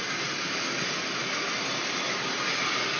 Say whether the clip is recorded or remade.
recorded